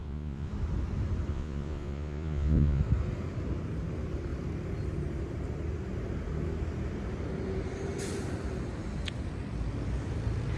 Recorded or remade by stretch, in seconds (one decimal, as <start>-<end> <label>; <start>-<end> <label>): 0.0-0.5 remade; 0.5-1.3 recorded; 1.3-2.8 remade; 2.8-10.6 recorded